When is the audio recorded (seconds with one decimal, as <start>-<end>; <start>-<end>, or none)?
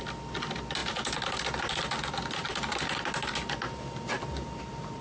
0.0-5.0